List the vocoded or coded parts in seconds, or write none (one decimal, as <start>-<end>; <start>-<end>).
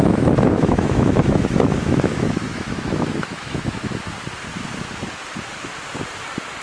0.0-4.0